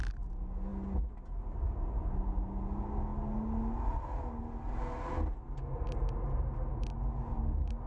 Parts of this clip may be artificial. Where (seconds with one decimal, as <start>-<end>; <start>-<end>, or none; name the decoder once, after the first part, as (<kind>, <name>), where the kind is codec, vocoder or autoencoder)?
none

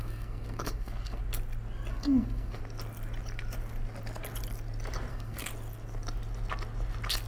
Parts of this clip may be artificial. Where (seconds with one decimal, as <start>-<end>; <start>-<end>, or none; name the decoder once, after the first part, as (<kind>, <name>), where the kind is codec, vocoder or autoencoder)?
0.0-1.2 (codec, SNAC); 1.9-2.6; 5.1-5.5

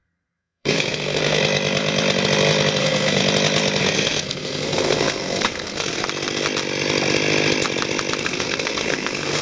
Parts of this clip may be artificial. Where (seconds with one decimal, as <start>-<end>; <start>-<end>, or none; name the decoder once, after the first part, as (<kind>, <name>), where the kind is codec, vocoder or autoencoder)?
0.0-1.4 (codec, SNAC); 2.8-3.2; 3.8-6.0; 8.2-9.4

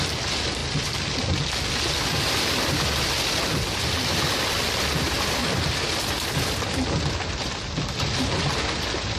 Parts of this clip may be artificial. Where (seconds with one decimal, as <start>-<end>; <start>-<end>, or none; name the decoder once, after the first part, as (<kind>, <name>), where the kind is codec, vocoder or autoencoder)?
none

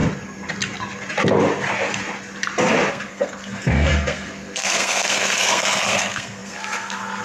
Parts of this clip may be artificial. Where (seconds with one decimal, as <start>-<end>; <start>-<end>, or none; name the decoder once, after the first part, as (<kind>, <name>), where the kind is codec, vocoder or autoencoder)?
2.9-7.2 (codec, SNAC)

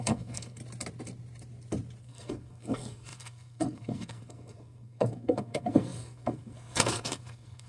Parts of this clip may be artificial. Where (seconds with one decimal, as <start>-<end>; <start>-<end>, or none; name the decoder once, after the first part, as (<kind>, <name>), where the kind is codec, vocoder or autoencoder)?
0.0-0.6 (codec, SNAC); 2.0-7.7

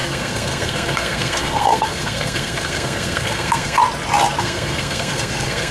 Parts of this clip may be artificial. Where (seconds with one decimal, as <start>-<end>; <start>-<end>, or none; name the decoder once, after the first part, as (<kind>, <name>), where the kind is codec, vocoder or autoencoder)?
0.0-3.8 (codec, SNAC); 4.4-5.7

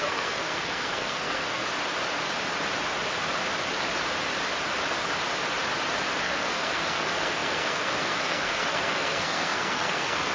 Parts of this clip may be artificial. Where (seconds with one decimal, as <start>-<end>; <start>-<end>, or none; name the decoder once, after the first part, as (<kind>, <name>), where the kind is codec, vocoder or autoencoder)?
0.0-1.6 (codec, SNAC); 6.2-10.3